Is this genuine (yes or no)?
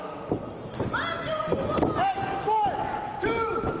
yes